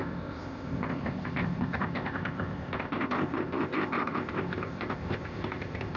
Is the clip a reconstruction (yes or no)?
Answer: yes